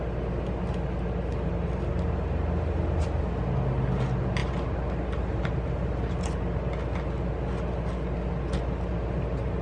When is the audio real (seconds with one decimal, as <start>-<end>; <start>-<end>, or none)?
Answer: 0.0-9.6